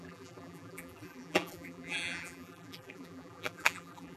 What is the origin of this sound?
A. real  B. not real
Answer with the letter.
B